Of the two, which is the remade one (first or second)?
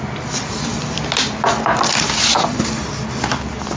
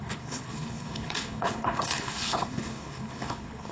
second